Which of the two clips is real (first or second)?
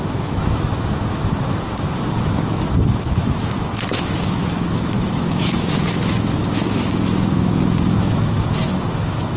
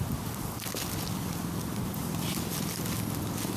second